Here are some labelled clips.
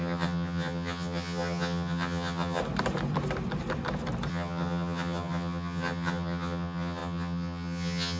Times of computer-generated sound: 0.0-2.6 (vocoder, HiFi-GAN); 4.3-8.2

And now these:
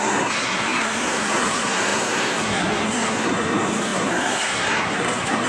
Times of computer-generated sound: 0.0-5.5 (codec, SNAC)